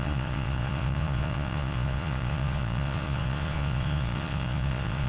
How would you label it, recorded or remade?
remade